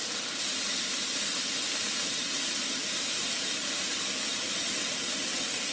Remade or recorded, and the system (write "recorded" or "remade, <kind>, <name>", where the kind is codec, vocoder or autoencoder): recorded